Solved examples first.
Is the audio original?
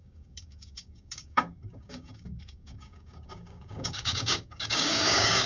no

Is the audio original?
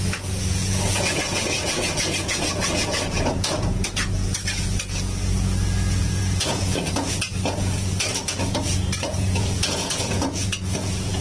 no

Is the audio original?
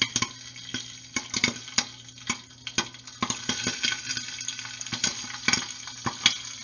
yes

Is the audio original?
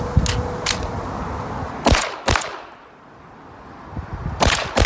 yes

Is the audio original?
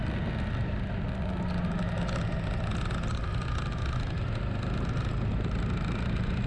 yes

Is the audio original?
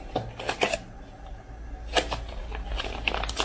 yes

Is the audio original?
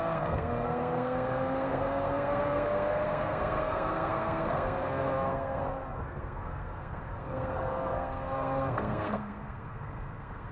no